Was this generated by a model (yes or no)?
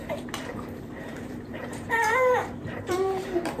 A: yes